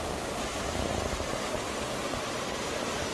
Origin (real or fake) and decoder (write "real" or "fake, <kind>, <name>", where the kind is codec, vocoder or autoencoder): real